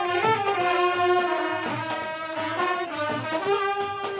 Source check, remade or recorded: remade